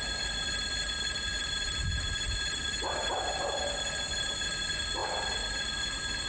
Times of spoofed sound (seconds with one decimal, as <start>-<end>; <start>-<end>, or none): none